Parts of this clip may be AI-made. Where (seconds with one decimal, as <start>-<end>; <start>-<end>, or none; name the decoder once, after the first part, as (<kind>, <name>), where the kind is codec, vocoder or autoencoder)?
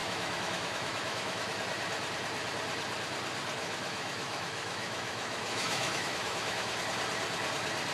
0.0-1.6 (autoencoder, DAC-VAE); 3.6-6.7